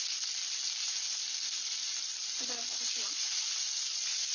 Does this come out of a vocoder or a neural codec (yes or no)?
no